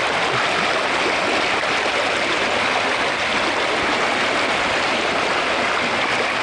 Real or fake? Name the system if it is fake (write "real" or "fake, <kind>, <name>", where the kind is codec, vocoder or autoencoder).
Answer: real